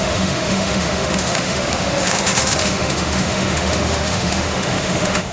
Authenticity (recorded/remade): remade